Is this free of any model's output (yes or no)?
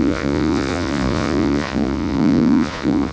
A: no